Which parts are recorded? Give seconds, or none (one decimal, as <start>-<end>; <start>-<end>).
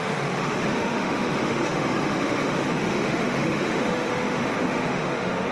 none